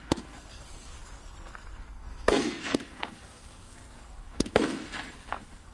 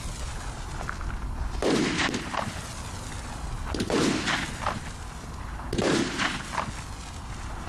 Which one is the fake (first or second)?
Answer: first